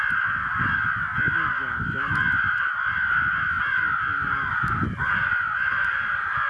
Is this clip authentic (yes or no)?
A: yes